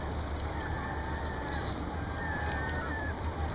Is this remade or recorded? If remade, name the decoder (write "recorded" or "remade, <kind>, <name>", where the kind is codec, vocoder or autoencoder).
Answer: remade, vocoder, BigVGAN v2